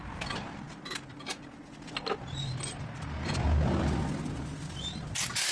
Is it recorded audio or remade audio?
recorded